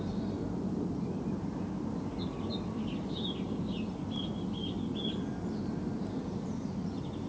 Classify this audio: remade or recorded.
recorded